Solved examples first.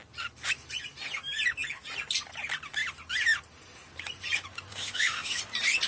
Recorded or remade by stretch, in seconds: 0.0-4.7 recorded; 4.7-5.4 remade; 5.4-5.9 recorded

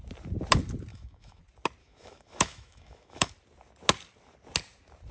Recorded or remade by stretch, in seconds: 0.0-0.9 recorded; 0.9-1.4 remade; 1.4-1.8 recorded; 1.8-3.3 remade; 3.3-5.1 recorded

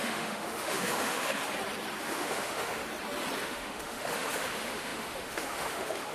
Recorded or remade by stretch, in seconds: 0.0-1.4 remade; 1.4-2.0 recorded; 2.0-2.8 remade; 2.8-3.4 recorded; 3.4-6.1 remade

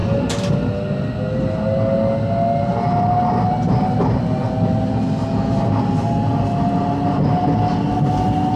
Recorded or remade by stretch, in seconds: 0.0-8.6 recorded

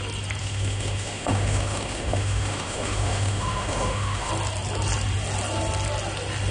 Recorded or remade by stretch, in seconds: 0.0-0.4 recorded; 0.4-4.3 remade; 4.3-6.5 recorded

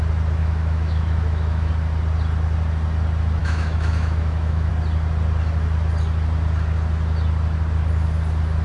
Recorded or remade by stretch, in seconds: 0.0-0.4 recorded; 0.4-1.7 remade; 1.7-3.4 recorded; 3.4-4.7 remade; 4.7-8.6 recorded

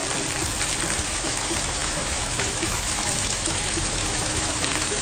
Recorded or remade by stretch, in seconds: 0.0-1.0 recorded; 1.0-5.0 remade